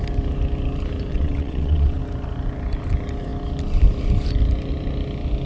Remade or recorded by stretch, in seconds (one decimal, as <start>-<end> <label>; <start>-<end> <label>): 0.0-1.1 recorded; 1.1-2.0 remade; 2.0-5.5 recorded